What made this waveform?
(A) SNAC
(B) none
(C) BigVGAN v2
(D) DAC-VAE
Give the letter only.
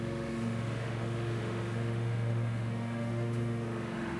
D